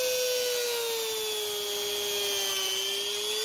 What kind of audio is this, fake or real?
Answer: real